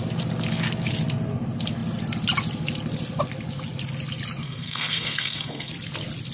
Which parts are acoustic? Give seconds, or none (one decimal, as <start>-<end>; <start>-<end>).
0.0-4.4; 5.7-6.3